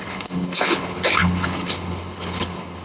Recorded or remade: remade